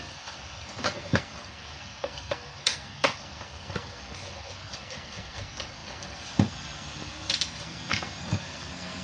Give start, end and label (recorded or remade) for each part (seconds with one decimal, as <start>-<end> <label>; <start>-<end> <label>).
0.0-9.0 remade